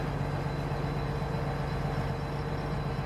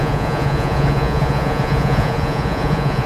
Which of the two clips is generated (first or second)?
second